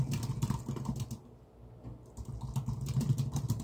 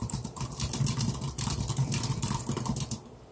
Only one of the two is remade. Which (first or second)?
second